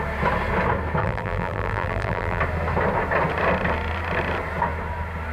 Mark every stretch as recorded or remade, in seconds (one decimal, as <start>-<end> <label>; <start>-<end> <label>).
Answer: 0.0-1.0 recorded; 1.0-2.4 remade; 2.4-5.3 recorded